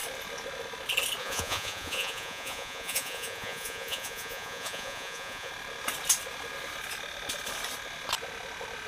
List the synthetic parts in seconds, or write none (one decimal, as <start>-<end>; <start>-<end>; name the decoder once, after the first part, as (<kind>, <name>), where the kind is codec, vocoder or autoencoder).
1.2-5.5 (vocoder, Vocos)

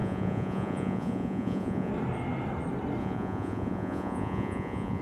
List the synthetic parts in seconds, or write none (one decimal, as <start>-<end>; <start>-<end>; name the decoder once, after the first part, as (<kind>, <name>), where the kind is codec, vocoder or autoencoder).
0.0-1.9 (vocoder, Vocos); 3.0-5.0

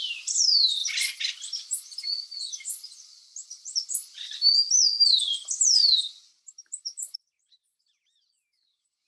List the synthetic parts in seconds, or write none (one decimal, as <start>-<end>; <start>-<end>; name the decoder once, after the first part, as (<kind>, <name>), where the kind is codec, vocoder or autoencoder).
none

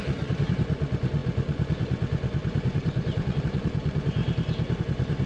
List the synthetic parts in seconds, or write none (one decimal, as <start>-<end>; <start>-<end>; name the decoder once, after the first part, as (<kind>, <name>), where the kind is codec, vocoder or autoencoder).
0.0-4.2 (vocoder, Vocos); 4.8-5.3

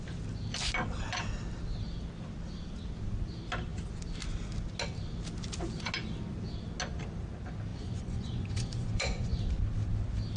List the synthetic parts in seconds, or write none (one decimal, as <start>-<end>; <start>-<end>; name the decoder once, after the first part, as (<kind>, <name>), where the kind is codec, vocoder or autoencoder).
7.7-9.4 (vocoder, Vocos)

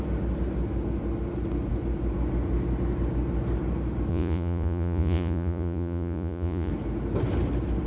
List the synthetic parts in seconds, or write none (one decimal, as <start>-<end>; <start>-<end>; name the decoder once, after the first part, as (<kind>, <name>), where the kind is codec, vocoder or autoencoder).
4.1-6.7 (vocoder, Vocos)

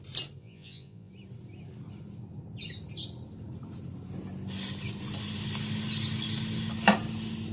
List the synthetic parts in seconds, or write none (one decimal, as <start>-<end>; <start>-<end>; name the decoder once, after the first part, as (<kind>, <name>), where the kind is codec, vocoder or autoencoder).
0.4-1.1 (vocoder, Vocos)